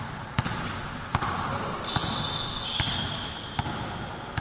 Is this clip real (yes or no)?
yes